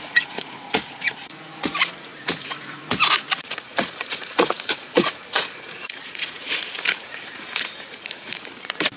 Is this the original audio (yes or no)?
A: no